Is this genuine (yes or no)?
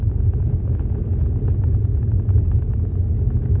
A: yes